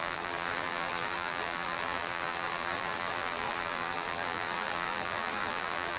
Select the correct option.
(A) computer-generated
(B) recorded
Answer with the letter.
A